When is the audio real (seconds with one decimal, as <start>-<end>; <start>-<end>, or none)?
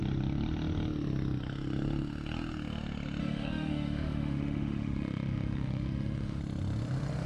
0.0-3.2; 6.4-7.3